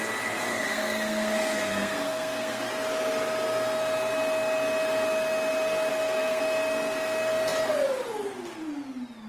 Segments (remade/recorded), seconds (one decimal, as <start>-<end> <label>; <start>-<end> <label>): 0.0-0.5 recorded; 0.5-2.7 remade; 2.7-5.9 recorded; 5.9-6.4 remade; 6.4-9.3 recorded